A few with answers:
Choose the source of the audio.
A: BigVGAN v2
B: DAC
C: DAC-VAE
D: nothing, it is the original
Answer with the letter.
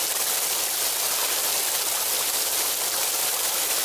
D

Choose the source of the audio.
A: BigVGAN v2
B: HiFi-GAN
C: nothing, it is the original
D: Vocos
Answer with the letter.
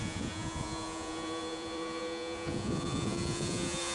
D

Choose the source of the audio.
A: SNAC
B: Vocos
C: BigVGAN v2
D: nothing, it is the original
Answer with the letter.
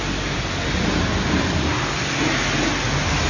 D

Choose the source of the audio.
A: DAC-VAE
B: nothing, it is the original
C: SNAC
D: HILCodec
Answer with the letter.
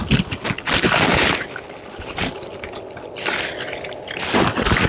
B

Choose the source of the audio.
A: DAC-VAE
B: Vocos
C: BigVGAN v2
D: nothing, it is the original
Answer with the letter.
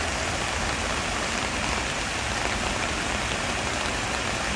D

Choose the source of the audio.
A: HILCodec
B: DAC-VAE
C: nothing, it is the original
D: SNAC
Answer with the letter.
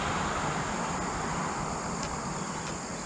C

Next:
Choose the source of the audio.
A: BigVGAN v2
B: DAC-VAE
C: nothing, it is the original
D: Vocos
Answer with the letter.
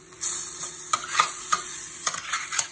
D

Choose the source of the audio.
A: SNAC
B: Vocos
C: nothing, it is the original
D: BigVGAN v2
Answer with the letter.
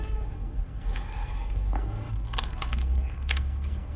A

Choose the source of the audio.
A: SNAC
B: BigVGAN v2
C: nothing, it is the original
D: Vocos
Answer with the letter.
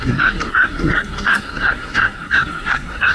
A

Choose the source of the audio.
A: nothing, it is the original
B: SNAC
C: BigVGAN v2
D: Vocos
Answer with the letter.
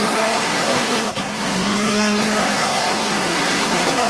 B